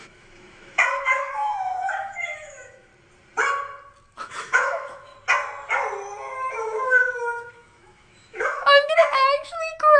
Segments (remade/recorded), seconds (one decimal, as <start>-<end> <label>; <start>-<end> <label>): 0.0-2.9 remade; 2.9-4.2 recorded; 4.2-5.1 remade; 5.1-6.5 recorded; 6.5-10.0 remade